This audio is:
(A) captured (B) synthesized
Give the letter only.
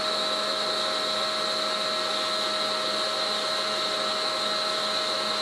A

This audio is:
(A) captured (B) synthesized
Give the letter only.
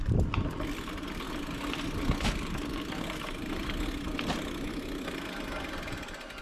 A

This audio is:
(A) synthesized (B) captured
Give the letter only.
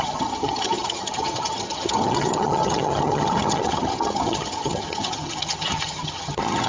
A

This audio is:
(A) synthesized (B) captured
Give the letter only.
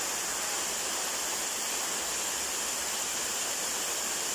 A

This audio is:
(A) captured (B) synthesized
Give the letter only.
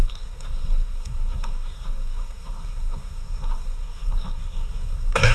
B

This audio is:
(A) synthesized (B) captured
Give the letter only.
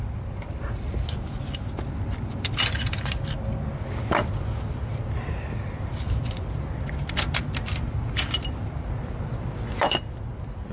B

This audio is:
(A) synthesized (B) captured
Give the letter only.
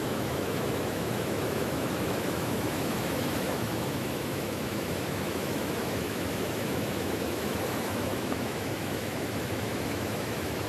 A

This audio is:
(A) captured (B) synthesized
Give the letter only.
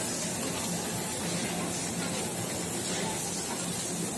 A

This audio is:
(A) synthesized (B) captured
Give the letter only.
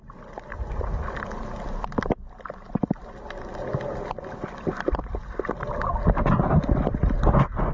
B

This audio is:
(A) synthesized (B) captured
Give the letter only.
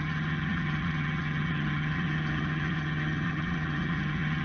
A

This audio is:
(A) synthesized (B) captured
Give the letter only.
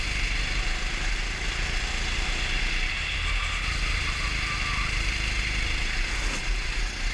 B